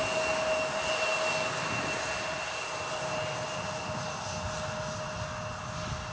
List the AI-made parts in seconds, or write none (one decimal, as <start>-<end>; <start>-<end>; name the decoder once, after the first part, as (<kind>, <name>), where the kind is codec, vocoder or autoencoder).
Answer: none